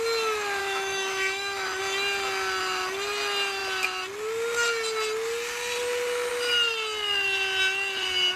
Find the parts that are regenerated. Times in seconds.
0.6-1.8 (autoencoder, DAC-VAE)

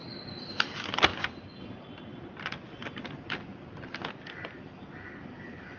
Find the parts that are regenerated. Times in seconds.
none

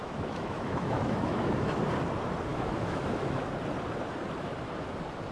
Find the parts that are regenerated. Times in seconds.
0.0-1.8 (autoencoder, DAC-VAE); 2.5-3.4

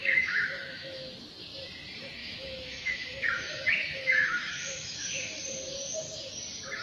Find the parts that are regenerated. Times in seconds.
0.0-1.1 (autoencoder, DAC-VAE); 2.2-5.4

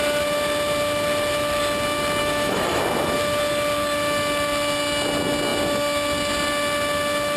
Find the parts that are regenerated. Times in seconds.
2.2-2.8 (autoencoder, DAC-VAE)